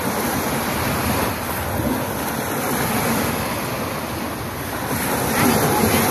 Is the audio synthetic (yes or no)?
no